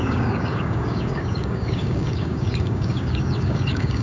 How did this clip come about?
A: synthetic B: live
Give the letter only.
A